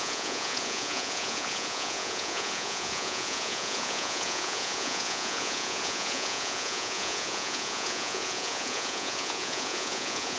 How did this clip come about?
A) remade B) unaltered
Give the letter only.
A